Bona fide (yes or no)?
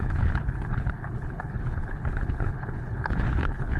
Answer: no